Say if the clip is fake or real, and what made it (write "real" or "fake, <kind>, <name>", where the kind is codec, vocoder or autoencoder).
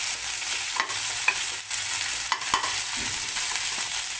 real